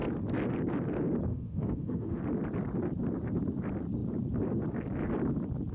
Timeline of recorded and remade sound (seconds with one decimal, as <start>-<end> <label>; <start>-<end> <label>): 0.0-1.3 recorded; 1.3-2.2 remade; 2.2-5.7 recorded